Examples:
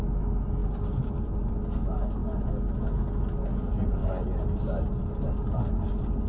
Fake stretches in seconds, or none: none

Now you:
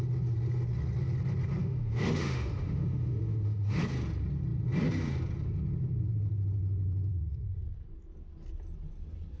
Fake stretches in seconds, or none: 1.6-3.8 (autoencoder, DAC-VAE)

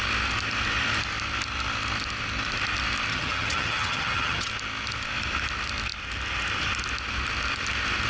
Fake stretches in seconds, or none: 3.1-4.5 (vocoder, HiFi-GAN)

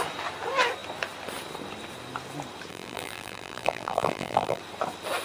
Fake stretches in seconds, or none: 2.7-4.6 (vocoder, BigVGAN v2)

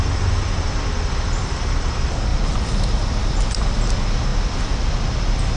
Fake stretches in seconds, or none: none

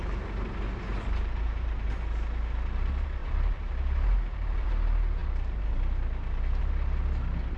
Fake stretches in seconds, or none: 0.9-2.0 (vocoder, BigVGAN v2); 3.2-4.7

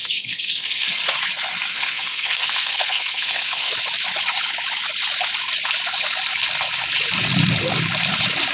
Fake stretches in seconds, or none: 0.0-1.0 (codec, SNAC); 1.7-3.7

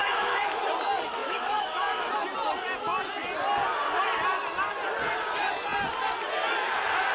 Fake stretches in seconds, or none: 0.0-0.6 (autoencoder, DAC-VAE); 1.2-2.1